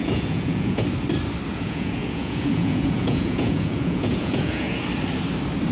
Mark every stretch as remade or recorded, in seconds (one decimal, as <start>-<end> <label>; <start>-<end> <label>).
0.0-0.8 remade; 0.8-1.5 recorded; 1.5-4.8 remade; 4.8-5.7 recorded